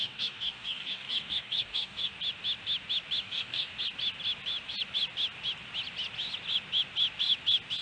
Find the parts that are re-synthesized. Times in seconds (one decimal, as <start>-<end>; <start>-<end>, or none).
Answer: 0.0-2.1; 3.2-3.7